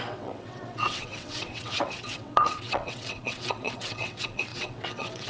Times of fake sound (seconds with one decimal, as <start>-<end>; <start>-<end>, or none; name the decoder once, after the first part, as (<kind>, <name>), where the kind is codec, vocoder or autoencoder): 0.0-5.3 (vocoder, WaveNeXt)